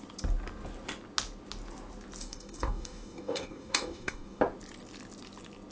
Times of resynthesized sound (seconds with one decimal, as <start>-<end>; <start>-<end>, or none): 2.2-4.4